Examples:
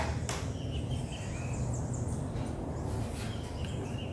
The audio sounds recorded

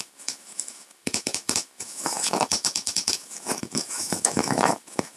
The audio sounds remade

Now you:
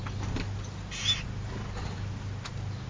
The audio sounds recorded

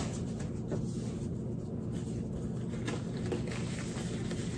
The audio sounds recorded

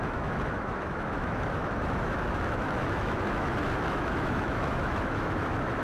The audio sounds remade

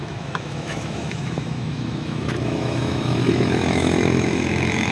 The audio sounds remade